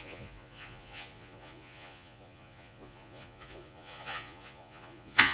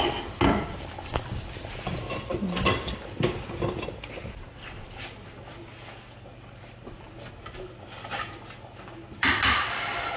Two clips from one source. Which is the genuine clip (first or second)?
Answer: second